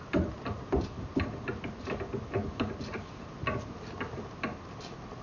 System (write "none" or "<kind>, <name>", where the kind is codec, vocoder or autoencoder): none